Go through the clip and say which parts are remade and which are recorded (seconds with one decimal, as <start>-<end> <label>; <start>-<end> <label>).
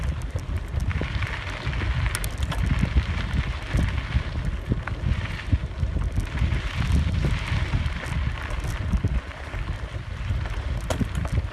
0.0-11.5 recorded